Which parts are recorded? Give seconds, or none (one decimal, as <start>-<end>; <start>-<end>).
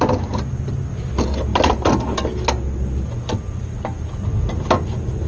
0.0-5.3